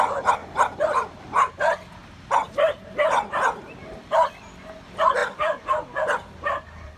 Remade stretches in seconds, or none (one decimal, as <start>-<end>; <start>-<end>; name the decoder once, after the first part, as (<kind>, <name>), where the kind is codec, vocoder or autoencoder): 0.4-1.5 (vocoder, BigVGAN v2); 2.0-3.2; 5.2-7.0